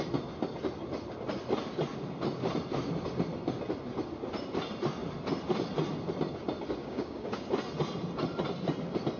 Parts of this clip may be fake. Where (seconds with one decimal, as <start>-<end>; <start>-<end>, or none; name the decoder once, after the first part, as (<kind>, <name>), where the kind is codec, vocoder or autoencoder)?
6.8-7.5 (codec, DAC)